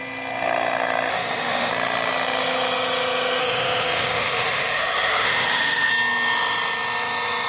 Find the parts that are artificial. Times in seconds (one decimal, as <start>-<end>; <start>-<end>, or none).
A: 1.1-1.7; 3.4-5.9